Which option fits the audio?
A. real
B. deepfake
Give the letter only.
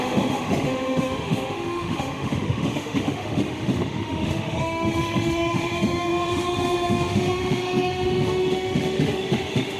B